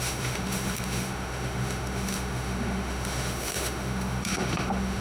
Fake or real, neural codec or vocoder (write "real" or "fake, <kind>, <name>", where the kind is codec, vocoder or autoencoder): fake, autoencoder, DAC-VAE